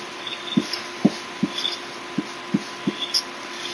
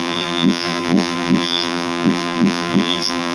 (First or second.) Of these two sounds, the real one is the first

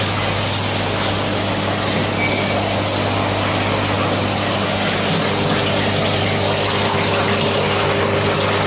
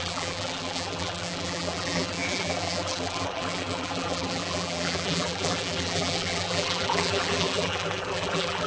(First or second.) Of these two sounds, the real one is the first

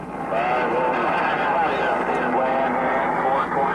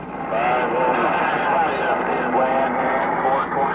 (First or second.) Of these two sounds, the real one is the first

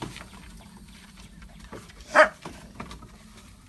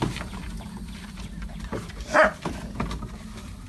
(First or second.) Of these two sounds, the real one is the second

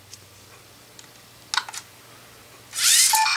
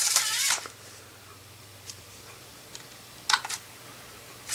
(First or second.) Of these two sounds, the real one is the first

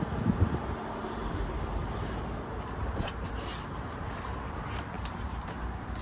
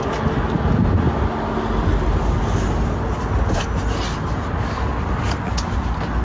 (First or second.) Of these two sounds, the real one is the second